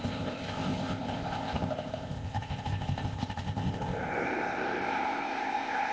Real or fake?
fake